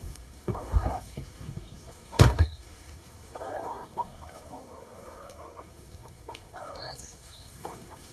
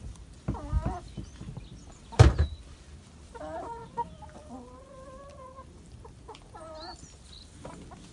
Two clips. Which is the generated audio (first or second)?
first